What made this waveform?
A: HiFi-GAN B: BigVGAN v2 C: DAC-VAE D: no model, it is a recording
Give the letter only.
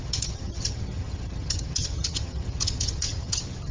A